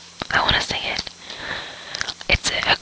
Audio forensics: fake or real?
real